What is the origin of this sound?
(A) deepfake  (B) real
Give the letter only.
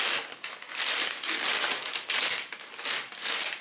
B